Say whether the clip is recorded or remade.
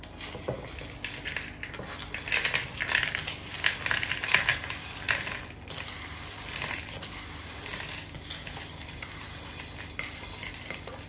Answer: recorded